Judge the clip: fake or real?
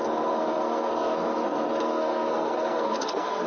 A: fake